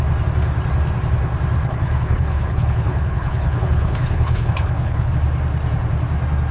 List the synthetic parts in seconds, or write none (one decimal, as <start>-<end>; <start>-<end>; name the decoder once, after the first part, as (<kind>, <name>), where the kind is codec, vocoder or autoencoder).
1.6-5.1 (codec, HILCodec)